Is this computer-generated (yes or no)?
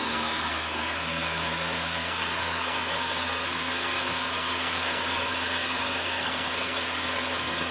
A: yes